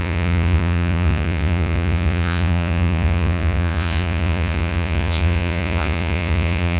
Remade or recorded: remade